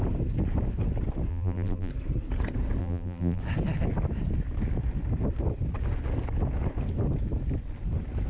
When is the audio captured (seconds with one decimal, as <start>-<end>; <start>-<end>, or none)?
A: 0.0-1.3; 1.9-2.8; 3.4-8.3